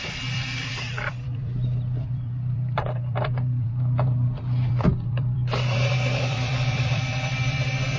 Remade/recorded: remade